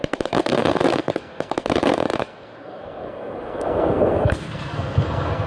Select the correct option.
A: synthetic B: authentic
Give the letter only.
A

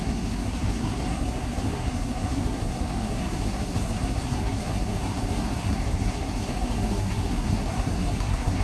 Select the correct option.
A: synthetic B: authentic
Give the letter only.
A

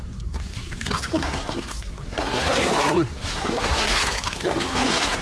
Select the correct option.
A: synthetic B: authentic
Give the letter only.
A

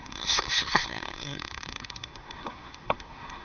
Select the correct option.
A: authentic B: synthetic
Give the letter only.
B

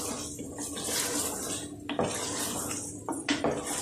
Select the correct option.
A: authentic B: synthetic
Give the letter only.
A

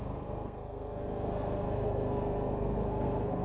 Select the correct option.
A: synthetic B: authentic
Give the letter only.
A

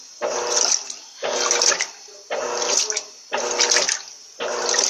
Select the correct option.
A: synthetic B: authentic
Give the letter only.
B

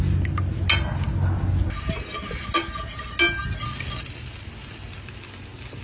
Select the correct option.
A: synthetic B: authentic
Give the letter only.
B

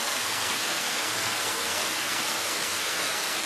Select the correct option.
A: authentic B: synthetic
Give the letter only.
B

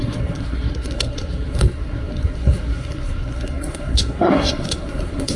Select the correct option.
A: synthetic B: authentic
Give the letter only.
A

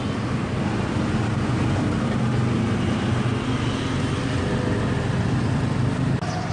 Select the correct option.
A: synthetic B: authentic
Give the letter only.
B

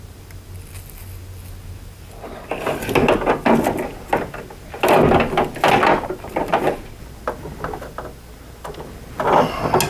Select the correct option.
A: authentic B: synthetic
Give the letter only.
A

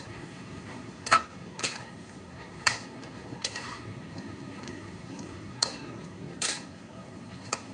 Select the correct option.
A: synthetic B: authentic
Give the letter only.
A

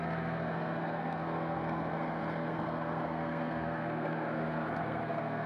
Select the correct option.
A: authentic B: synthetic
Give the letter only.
B